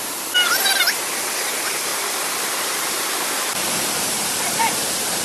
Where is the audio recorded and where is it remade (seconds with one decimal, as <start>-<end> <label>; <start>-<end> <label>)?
0.0-1.9 recorded; 1.9-5.2 remade